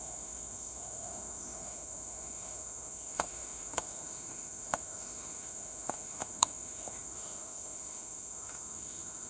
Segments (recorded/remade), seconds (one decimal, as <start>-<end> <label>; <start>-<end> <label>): 0.0-9.3 remade